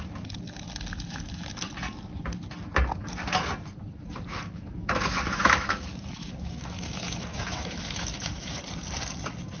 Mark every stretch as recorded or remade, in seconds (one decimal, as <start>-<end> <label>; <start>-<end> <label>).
0.0-4.3 recorded; 4.3-8.6 remade; 8.6-9.6 recorded